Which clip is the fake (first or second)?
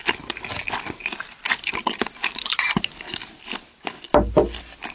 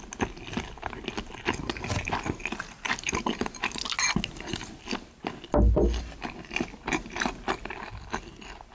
first